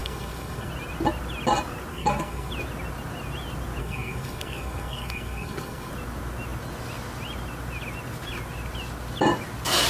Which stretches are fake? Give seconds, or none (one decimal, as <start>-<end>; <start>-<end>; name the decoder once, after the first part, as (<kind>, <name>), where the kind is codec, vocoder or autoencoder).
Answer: 0.0-0.7 (codec, SNAC); 1.9-2.5; 3.8-5.9